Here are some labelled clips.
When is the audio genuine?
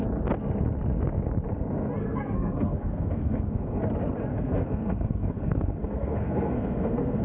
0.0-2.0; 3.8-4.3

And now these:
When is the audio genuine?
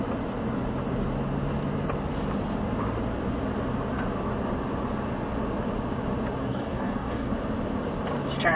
0.0-6.4; 7.3-8.6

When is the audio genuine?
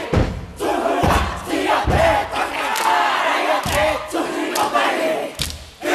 0.0-5.9